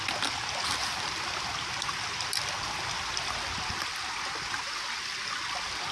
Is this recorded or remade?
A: recorded